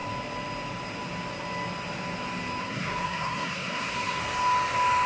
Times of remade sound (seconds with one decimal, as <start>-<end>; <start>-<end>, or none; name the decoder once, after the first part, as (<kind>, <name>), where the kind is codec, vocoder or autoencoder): 2.6-4.2 (codec, SNAC)